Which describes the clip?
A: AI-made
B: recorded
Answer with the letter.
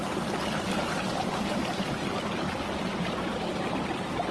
B